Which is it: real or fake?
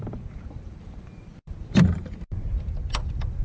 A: fake